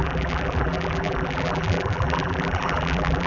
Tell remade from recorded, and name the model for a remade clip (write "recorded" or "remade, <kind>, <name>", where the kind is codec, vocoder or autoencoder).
remade, vocoder, BigVGAN v2